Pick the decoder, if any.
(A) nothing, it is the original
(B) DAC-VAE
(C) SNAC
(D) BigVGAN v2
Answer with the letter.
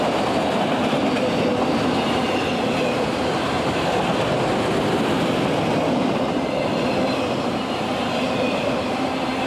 A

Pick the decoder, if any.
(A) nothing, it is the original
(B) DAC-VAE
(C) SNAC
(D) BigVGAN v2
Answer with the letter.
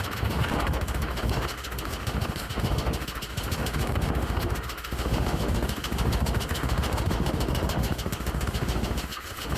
B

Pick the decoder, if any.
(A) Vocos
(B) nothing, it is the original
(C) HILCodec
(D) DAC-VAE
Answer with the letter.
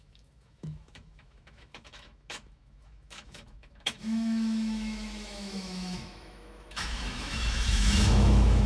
D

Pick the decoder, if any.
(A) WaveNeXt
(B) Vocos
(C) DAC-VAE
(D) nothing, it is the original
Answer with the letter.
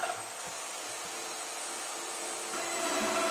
D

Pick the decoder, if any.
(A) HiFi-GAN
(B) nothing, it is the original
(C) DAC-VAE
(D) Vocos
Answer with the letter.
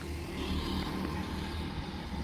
B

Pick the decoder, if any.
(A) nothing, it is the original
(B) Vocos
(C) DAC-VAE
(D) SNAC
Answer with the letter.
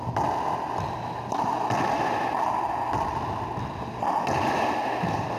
A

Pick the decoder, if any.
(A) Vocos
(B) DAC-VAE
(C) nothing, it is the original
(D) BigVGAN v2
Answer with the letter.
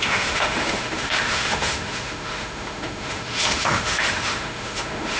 B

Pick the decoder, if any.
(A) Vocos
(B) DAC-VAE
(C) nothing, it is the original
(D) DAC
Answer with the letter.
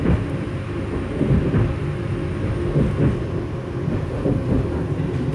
C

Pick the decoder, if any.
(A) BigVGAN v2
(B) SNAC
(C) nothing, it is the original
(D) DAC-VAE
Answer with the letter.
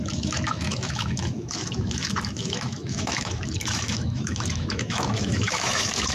D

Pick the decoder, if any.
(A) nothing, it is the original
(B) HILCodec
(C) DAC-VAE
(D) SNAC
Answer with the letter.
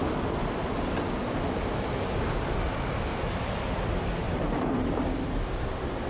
A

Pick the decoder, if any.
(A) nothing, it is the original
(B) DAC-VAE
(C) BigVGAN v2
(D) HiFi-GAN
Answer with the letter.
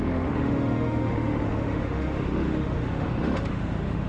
B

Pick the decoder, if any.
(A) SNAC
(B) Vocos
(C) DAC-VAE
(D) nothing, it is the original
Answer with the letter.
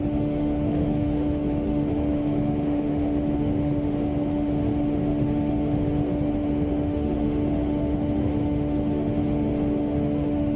C